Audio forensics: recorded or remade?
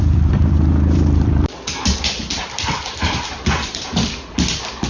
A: remade